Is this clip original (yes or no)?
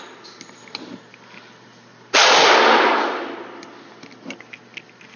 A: yes